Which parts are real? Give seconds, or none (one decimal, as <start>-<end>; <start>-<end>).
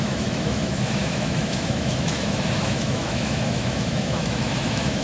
none